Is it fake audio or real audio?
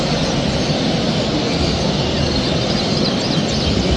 real